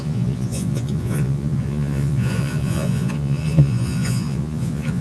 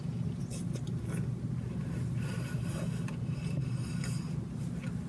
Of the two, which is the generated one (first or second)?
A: first